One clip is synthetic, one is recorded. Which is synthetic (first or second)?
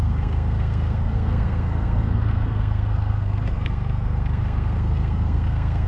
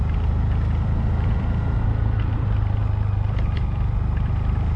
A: first